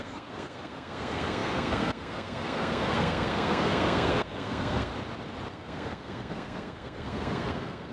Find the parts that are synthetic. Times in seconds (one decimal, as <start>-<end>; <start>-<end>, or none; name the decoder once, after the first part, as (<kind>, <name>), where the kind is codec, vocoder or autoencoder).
0.0-4.9 (codec, SNAC); 5.5-7.9